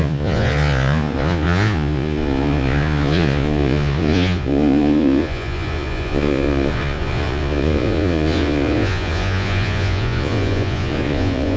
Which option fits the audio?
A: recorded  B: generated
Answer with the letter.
B